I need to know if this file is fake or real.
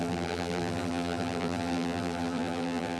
fake